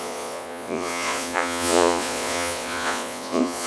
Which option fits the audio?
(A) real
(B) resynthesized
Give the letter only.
B